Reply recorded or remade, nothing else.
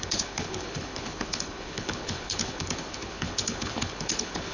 remade